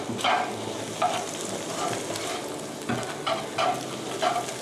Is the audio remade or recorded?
recorded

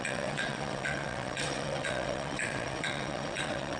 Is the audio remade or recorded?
remade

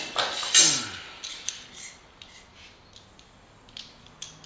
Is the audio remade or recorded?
recorded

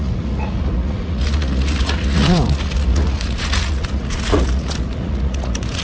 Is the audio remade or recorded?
remade